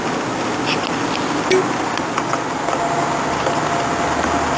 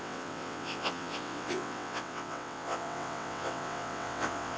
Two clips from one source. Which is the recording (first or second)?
first